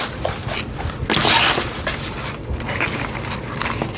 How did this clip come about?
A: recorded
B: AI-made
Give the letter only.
A